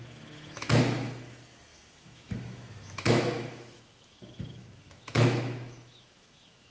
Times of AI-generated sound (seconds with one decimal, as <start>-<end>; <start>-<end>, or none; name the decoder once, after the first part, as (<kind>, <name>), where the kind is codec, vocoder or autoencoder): 0.0-6.7 (autoencoder, DAC-VAE)